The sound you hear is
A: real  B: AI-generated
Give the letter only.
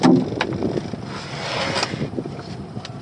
A